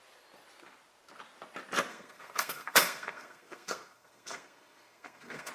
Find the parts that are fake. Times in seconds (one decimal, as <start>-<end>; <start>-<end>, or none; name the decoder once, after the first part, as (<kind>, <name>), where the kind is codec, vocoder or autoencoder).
1.9-5.5 (codec, SNAC)